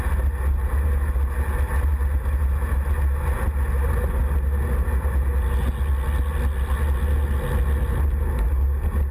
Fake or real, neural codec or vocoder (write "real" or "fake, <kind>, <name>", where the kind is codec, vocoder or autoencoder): real